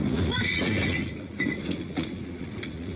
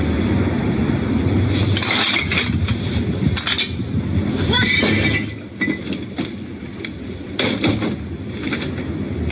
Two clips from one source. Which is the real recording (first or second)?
second